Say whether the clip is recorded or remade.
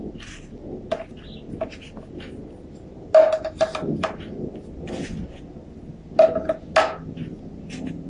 recorded